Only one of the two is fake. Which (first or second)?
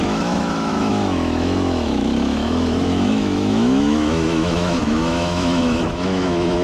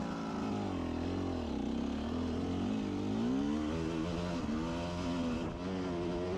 first